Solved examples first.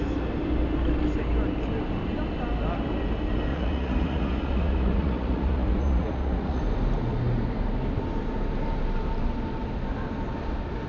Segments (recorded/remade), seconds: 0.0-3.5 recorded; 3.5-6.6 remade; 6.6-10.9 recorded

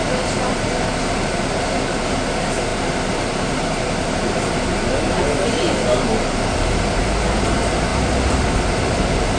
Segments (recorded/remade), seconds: 0.0-9.4 recorded

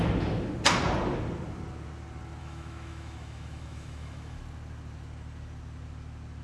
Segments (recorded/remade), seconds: 0.0-2.4 recorded; 2.4-4.4 remade; 4.4-6.4 recorded

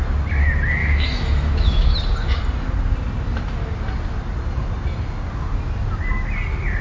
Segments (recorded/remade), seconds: 0.0-0.8 recorded; 0.8-1.9 remade; 1.9-6.8 recorded